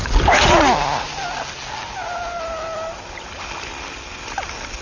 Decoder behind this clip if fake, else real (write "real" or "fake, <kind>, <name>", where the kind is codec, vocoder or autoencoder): real